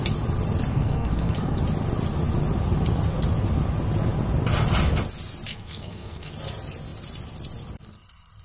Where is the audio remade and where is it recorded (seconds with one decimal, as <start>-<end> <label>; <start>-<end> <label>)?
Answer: 0.0-0.7 recorded; 0.7-1.6 remade; 1.6-5.5 recorded; 5.5-6.3 remade; 6.3-8.4 recorded